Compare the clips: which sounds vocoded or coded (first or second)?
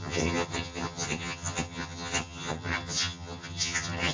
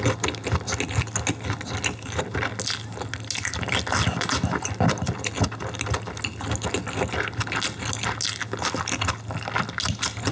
first